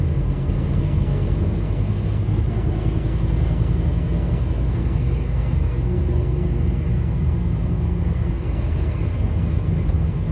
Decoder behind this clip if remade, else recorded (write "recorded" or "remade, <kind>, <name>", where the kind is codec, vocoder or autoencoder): remade, codec, SNAC